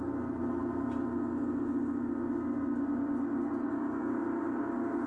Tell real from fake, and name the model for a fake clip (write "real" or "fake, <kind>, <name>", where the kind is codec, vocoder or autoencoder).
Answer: real